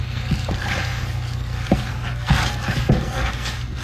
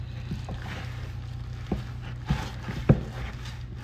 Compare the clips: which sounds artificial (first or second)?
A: first